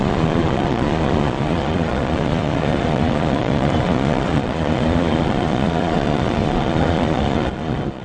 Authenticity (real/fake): fake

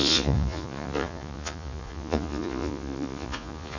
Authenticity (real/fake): fake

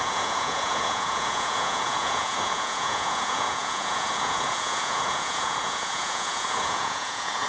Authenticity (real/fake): fake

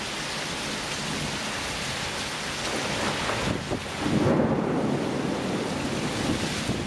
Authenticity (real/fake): real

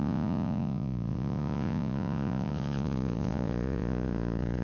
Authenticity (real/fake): fake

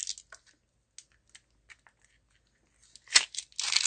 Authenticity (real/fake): real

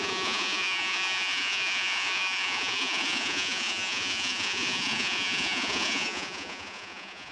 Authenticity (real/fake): fake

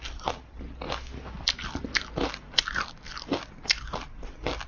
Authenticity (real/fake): real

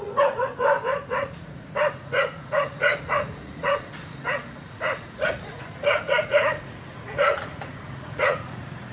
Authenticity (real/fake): fake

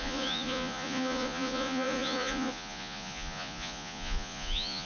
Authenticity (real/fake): fake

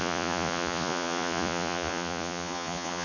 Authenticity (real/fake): fake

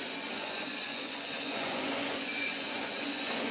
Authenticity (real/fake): fake